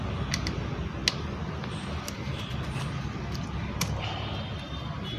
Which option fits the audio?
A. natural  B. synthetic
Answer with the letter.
A